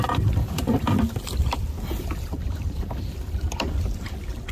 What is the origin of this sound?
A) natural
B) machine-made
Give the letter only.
B